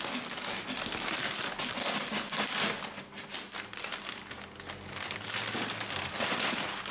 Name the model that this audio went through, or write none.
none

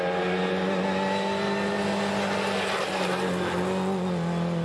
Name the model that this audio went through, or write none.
none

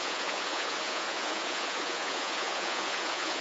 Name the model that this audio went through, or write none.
vocoder, Vocos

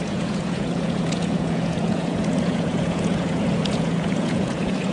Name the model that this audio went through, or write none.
vocoder, Vocos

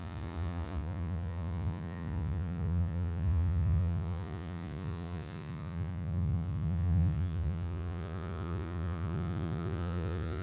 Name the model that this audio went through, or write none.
vocoder, Vocos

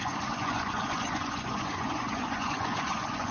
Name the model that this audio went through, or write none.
vocoder, Vocos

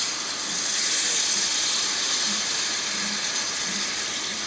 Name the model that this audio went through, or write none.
none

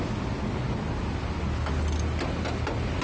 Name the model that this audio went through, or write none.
none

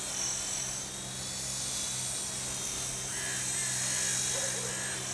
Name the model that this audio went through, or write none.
none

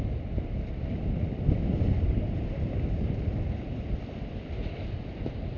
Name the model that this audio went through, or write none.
none